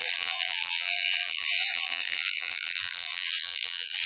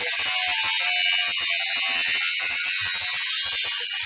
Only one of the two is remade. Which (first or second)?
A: first